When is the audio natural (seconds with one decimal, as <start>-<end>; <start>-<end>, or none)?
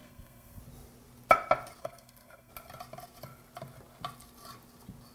0.6-1.8; 2.5-5.1